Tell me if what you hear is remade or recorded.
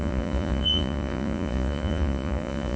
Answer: remade